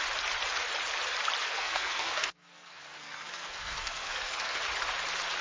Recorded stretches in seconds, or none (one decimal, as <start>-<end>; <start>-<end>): 0.0-1.4; 4.6-5.4